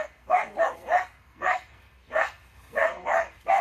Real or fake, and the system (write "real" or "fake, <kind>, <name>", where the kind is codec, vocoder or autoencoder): fake, codec, SNAC